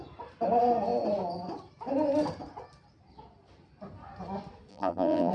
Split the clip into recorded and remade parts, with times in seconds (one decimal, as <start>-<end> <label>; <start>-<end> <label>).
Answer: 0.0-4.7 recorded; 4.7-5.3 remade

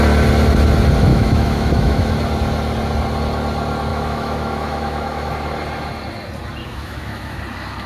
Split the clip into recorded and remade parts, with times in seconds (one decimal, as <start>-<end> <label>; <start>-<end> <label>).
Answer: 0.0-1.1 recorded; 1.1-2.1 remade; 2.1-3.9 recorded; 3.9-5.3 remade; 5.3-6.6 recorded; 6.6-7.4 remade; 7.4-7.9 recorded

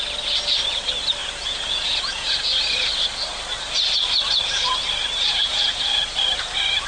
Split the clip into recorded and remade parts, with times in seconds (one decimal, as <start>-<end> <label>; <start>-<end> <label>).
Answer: 0.0-1.2 recorded; 1.2-2.3 remade; 2.3-5.3 recorded; 5.3-6.2 remade; 6.2-6.9 recorded